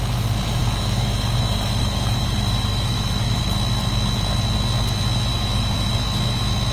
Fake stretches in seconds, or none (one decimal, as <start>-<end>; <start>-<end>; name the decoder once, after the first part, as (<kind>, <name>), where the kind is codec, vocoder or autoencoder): 0.6-3.4 (autoencoder, DAC-VAE); 5.3-5.9